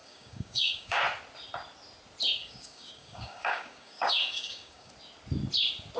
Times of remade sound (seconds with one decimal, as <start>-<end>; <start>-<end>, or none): 0.0-1.0; 2.4-4.9

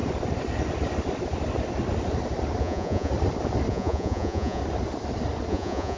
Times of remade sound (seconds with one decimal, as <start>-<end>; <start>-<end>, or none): 2.6-3.1; 3.7-4.6; 5.5-6.0

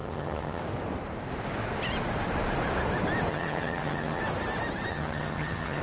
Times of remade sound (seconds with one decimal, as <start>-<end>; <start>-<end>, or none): 0.0-0.6; 3.3-4.2; 4.9-5.8

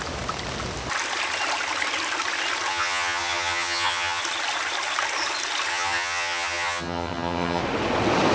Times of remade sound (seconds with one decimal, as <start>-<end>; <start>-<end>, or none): 2.7-4.2; 5.7-7.6

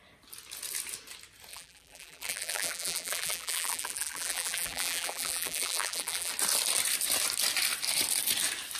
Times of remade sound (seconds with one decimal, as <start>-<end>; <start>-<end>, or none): 1.5-6.3

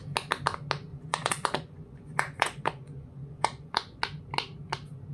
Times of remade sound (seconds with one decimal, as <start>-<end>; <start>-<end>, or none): 0.9-4.0

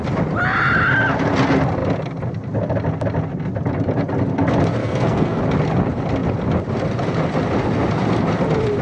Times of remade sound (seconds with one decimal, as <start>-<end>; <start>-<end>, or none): 4.8-5.4

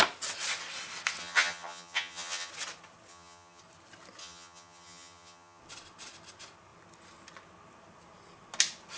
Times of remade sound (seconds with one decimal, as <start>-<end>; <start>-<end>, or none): 1.2-2.5; 3.1-3.6; 4.2-5.6